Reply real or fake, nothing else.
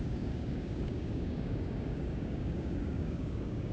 fake